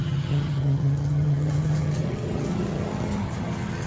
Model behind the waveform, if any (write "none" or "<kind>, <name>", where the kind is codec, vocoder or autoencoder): vocoder, HiFi-GAN